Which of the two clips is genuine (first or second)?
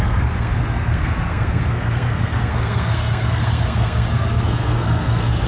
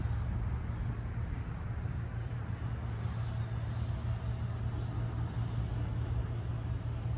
second